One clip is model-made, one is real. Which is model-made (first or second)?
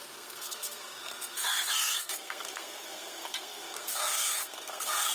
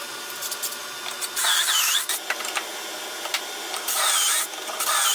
first